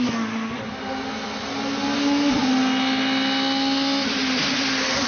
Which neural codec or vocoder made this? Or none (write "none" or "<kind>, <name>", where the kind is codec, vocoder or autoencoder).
none